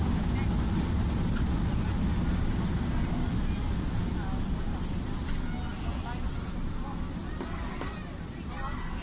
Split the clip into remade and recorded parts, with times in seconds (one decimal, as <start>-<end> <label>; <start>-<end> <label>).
0.0-9.0 recorded